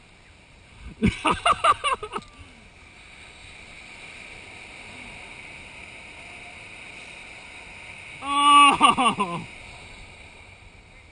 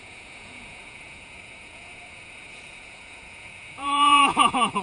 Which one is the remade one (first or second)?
second